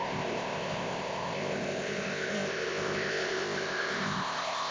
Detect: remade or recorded remade